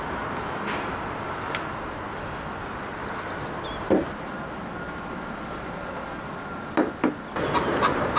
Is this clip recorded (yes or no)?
yes